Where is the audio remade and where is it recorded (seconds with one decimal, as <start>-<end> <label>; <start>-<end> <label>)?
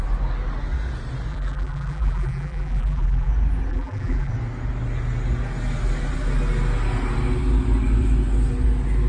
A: 0.0-1.3 recorded; 1.3-3.3 remade; 3.3-3.7 recorded; 3.7-4.3 remade; 4.3-9.1 recorded